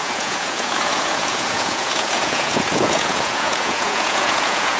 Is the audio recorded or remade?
remade